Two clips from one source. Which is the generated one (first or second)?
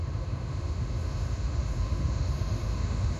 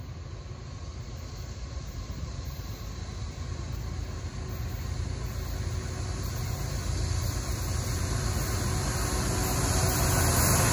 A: first